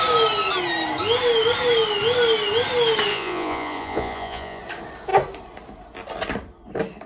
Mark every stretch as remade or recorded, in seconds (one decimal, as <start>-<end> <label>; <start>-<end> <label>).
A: 0.0-3.1 recorded; 3.1-4.6 remade; 4.6-7.1 recorded

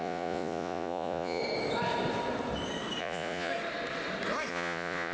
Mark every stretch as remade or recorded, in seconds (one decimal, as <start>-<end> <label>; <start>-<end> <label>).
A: 0.0-1.4 remade; 1.4-3.0 recorded; 3.0-3.5 remade; 3.5-4.5 recorded; 4.5-5.1 remade

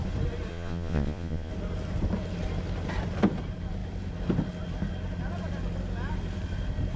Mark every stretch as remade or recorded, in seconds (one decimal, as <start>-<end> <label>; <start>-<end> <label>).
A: 0.0-0.5 recorded; 0.5-1.5 remade; 1.5-7.0 recorded

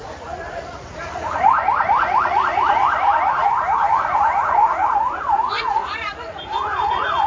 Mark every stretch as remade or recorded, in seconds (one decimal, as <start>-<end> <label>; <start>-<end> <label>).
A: 0.0-2.8 remade; 2.8-3.9 recorded; 3.9-7.3 remade

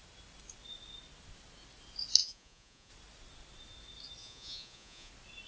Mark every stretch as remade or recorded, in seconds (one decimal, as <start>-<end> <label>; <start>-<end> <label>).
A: 0.0-2.2 recorded; 2.2-2.9 remade; 2.9-4.2 recorded; 4.2-5.1 remade; 5.1-5.5 recorded

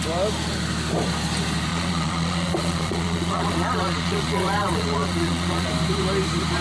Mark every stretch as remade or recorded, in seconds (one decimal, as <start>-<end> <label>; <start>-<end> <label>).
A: 0.0-1.7 recorded; 1.7-5.7 remade; 5.7-6.6 recorded

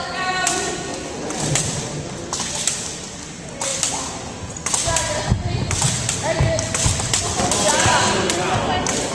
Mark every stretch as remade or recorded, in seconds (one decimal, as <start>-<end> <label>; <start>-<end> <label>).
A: 0.0-9.1 recorded

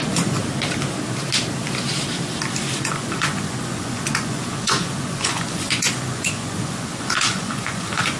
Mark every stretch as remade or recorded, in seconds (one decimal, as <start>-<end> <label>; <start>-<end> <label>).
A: 0.0-0.4 remade; 0.4-2.7 recorded; 2.7-8.2 remade